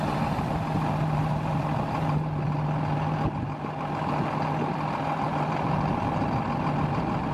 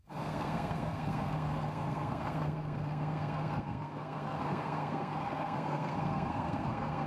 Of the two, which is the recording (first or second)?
first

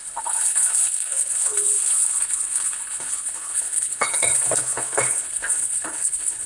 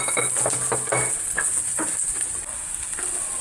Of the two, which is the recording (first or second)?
second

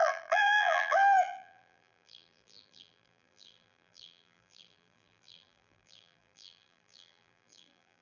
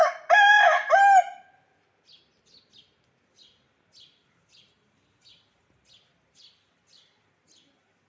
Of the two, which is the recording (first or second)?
second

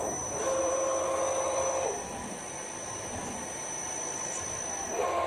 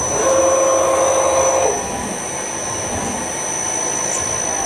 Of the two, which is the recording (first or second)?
second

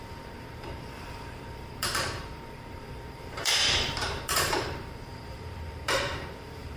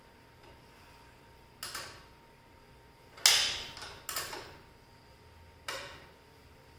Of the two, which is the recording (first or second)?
second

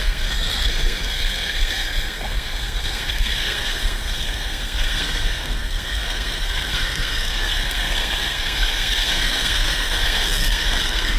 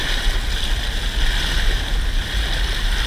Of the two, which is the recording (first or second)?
second